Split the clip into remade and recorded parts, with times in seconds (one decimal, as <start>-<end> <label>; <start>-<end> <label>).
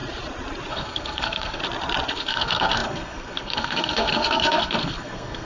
0.0-0.7 recorded; 0.7-1.6 remade; 1.6-2.1 recorded; 2.1-5.4 remade